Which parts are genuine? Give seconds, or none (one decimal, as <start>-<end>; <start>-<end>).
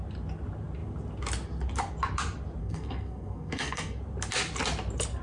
0.0-2.6; 4.0-5.2